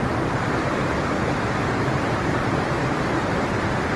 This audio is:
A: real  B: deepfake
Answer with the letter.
B